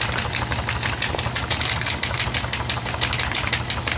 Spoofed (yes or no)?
no